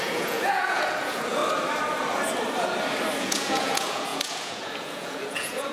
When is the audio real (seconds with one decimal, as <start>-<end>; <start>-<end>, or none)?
1.4-3.2